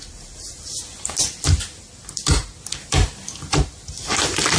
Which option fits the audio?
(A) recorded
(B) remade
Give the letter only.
B